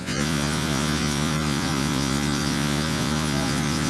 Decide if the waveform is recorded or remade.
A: remade